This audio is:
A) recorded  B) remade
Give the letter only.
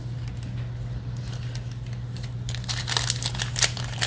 A